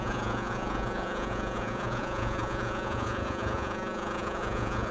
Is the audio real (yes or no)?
no